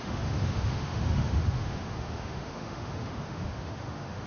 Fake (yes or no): yes